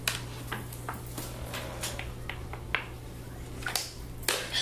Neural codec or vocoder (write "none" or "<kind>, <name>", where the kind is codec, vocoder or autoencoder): none